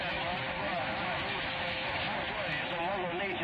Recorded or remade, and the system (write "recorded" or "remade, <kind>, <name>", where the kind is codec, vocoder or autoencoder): recorded